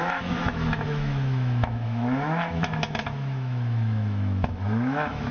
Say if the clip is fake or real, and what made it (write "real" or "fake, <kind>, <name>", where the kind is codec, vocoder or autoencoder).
fake, autoencoder, DAC-VAE